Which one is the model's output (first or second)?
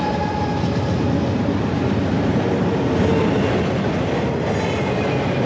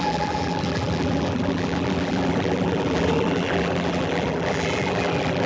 second